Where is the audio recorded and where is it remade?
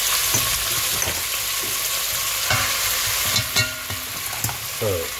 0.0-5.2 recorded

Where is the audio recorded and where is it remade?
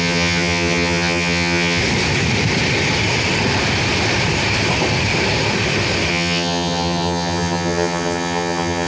0.0-1.8 remade; 1.8-6.1 recorded; 6.1-8.9 remade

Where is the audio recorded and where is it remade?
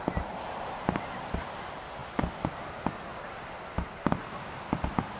0.0-5.2 recorded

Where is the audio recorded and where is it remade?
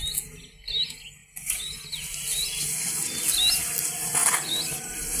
0.0-5.2 recorded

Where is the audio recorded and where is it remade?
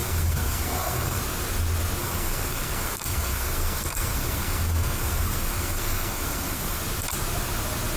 0.0-1.2 remade; 1.2-2.0 recorded; 2.0-6.8 remade; 6.8-8.0 recorded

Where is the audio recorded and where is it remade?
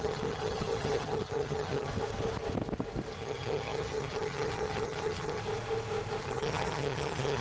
0.0-1.9 remade; 1.9-3.1 recorded; 3.1-5.4 remade; 5.4-6.2 recorded; 6.2-7.4 remade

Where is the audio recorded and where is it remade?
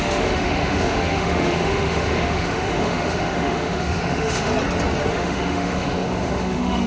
0.0-4.5 remade; 4.5-5.1 recorded; 5.1-6.9 remade